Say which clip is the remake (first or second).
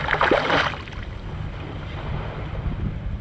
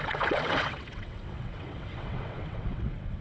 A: second